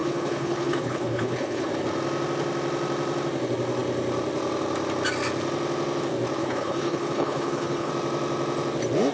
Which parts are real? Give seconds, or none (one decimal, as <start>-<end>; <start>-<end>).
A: 1.7-6.4; 7.9-9.1